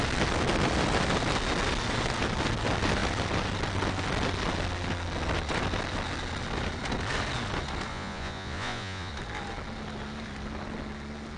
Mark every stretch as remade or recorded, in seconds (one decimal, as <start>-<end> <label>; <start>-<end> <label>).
0.0-7.9 recorded; 7.9-9.1 remade; 9.1-11.4 recorded